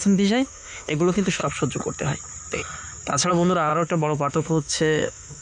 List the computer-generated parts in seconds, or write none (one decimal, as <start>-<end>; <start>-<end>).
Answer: 0.0-1.4; 3.3-5.4